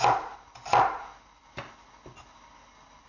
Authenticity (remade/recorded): recorded